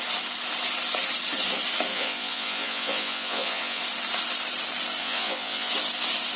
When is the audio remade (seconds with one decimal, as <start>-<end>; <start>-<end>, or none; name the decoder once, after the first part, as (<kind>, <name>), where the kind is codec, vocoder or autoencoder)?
1.9-3.8 (vocoder, Vocos); 5.0-5.7